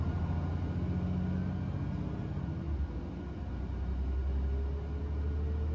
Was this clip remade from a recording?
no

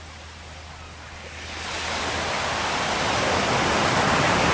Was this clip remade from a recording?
no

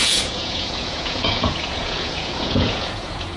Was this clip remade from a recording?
yes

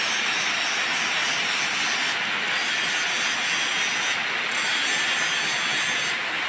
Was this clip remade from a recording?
no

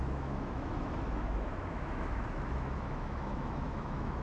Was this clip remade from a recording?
yes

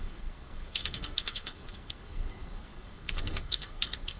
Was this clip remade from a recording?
yes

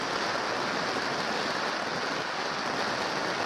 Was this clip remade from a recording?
no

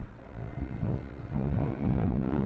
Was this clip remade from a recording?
yes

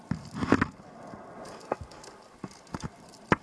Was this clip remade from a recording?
no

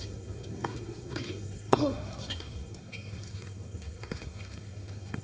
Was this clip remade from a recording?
yes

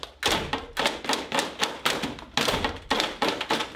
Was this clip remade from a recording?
no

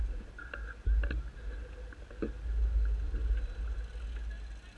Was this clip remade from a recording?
no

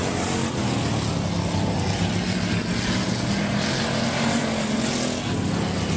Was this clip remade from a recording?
no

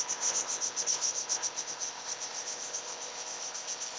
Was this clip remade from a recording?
yes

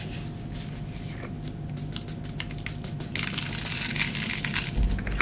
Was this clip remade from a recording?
no